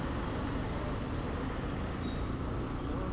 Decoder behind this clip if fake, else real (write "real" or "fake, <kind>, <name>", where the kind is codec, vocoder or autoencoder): real